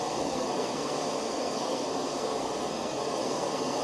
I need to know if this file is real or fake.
fake